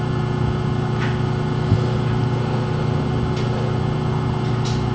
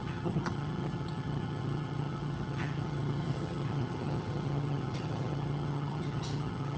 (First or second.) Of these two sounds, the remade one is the second